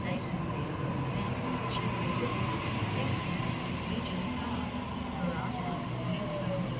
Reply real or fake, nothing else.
real